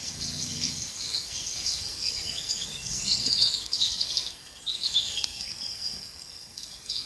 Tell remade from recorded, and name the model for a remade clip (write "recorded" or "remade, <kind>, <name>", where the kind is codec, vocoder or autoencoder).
remade, codec, SNAC